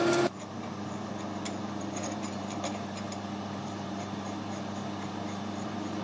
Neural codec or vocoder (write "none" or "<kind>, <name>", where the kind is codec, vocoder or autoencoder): vocoder, BigVGAN v2